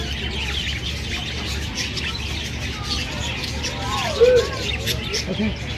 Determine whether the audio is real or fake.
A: real